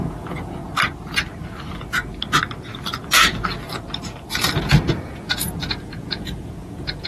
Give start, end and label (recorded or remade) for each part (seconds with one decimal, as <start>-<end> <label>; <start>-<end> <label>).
0.0-0.6 remade; 0.6-4.9 recorded; 4.9-7.1 remade